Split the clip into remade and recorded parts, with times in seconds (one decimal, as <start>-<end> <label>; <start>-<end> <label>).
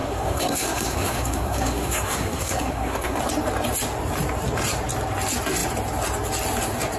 0.0-3.2 remade; 3.2-7.0 recorded